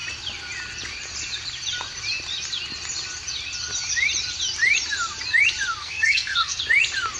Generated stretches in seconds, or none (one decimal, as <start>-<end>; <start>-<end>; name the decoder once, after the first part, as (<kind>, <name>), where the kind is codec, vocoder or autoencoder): 5.8-6.6 (codec, SNAC)